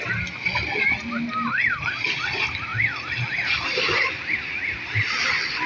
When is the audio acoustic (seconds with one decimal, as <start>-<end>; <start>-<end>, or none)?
0.0-5.7